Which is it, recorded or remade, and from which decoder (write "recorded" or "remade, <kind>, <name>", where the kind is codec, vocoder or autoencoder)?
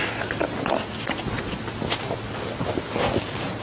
recorded